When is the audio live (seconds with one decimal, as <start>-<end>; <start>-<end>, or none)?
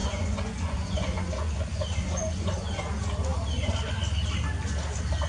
2.8-5.3